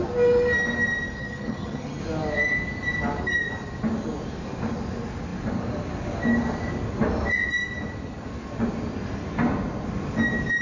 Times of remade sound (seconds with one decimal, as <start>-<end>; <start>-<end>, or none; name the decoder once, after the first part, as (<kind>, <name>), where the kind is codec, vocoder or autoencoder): 1.2-2.0 (vocoder, HiFi-GAN)